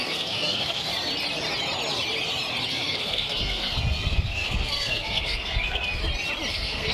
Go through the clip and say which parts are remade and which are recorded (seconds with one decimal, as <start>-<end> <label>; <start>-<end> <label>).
0.0-0.9 remade; 0.9-2.7 recorded; 2.7-6.0 remade; 6.0-6.5 recorded; 6.5-6.9 remade